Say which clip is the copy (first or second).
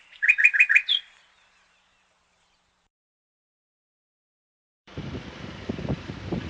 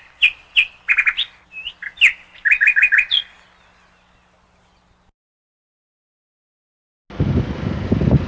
first